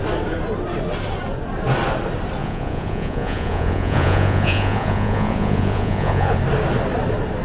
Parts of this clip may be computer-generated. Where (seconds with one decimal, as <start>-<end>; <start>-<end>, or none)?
2.4-6.4